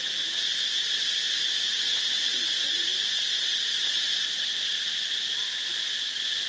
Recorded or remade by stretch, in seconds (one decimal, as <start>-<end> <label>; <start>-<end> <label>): 0.0-0.5 recorded; 0.5-3.1 remade; 3.1-3.7 recorded; 3.7-5.1 remade; 5.1-6.5 recorded